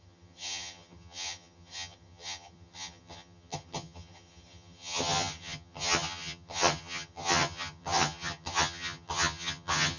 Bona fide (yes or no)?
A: no